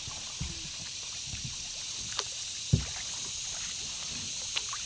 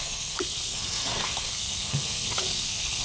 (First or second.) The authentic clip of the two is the first